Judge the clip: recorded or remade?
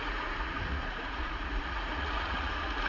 remade